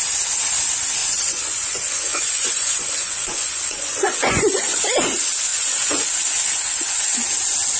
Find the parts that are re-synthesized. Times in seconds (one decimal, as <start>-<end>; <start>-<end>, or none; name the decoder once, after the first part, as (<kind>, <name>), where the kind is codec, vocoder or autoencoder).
1.0-4.8 (vocoder, Vocos); 5.5-6.1

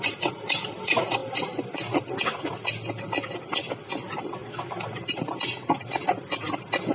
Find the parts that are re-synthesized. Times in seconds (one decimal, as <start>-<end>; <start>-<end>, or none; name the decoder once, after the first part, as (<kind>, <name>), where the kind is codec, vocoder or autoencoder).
none

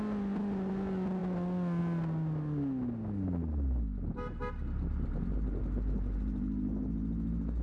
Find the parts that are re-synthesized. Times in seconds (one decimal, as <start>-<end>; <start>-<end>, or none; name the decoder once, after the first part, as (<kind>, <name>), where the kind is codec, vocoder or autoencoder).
none

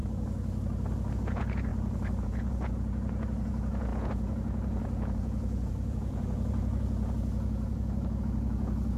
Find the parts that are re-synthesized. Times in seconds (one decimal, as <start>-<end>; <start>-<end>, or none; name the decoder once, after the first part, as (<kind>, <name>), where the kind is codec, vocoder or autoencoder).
1.1-1.7 (vocoder, Vocos); 2.2-9.0